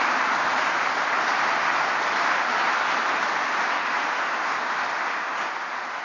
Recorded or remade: recorded